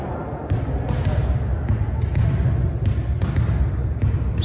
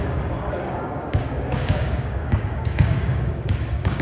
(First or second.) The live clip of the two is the first